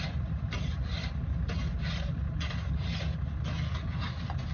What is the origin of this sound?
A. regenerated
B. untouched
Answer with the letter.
B